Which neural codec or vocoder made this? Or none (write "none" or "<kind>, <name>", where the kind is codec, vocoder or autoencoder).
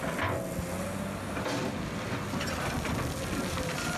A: none